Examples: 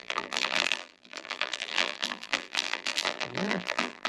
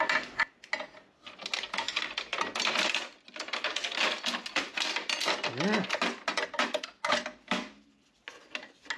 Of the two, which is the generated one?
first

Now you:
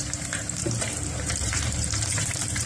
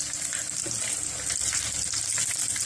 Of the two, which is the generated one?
first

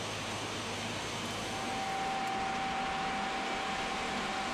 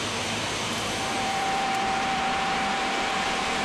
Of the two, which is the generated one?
second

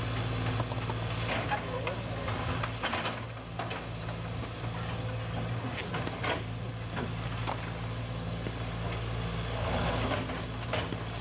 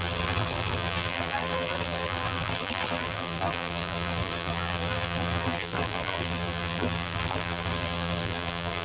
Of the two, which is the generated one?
second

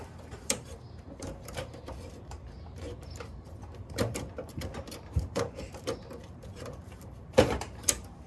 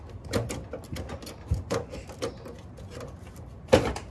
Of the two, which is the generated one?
first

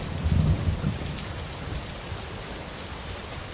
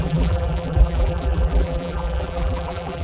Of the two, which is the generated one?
second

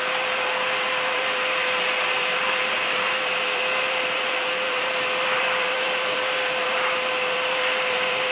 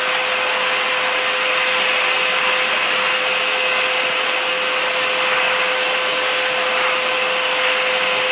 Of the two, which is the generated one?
first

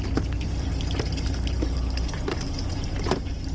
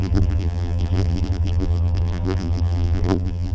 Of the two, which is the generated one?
second